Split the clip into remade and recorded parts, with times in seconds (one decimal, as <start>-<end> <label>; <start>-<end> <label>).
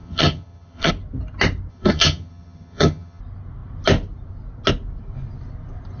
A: 0.0-0.9 remade; 0.9-1.7 recorded; 1.7-3.2 remade; 3.2-6.0 recorded